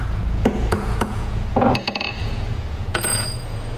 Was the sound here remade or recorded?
remade